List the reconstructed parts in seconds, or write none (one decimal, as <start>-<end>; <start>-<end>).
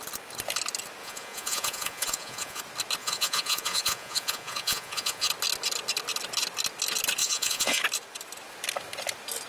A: 1.0-2.6; 3.0-5.3; 7.2-7.8